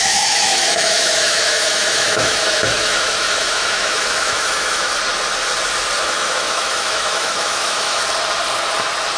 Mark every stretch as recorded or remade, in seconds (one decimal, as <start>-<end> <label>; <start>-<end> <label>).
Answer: 0.0-4.9 remade; 4.9-6.0 recorded; 6.0-8.0 remade; 8.0-9.2 recorded

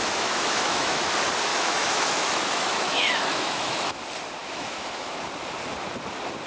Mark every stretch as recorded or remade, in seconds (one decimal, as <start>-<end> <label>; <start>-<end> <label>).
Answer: 0.0-1.1 remade; 1.1-1.5 recorded; 1.5-4.0 remade; 4.0-4.4 recorded; 4.4-5.1 remade; 5.1-6.5 recorded